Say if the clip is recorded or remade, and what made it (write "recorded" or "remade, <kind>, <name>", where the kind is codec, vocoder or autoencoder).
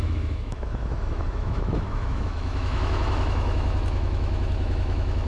remade, autoencoder, DAC-VAE